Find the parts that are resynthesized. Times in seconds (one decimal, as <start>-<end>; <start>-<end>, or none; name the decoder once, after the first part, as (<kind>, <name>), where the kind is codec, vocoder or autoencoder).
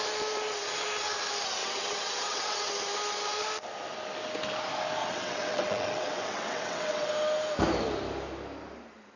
1.6-2.7 (vocoder, WaveNeXt); 5.0-7.1